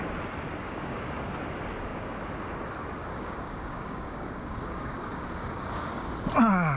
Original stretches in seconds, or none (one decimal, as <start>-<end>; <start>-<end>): 0.0-0.6; 1.4-1.9; 2.4-3.0; 6.1-6.8